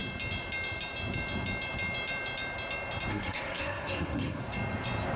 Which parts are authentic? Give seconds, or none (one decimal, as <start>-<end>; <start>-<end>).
0.0-3.1; 4.4-5.2